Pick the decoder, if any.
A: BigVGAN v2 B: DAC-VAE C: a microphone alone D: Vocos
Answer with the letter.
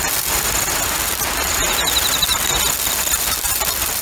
C